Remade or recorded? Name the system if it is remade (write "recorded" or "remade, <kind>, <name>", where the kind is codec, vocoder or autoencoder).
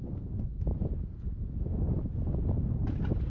recorded